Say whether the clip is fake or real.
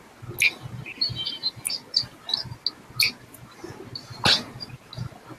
real